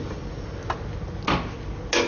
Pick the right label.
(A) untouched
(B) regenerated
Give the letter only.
A